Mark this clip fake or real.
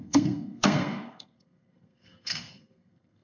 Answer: fake